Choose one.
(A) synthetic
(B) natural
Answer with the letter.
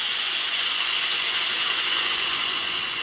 A